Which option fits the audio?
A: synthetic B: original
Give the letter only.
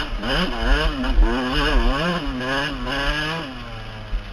B